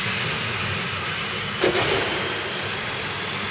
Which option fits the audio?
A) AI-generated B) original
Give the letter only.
B